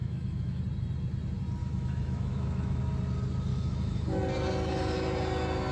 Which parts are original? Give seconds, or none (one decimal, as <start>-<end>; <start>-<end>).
0.6-1.6; 2.8-3.5; 4.2-5.7